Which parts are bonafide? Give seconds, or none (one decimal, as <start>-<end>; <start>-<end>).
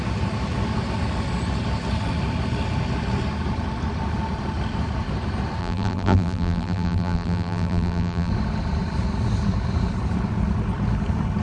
0.0-5.6; 8.3-11.4